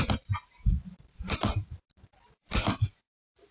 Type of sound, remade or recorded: remade